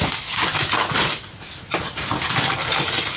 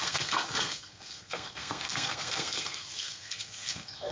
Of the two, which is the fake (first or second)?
second